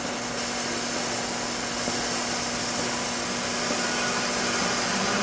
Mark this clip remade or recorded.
recorded